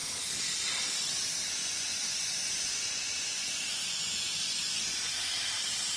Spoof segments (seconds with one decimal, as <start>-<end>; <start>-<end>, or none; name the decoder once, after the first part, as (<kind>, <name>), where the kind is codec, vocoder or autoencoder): 1.6-5.2 (vocoder, Vocos)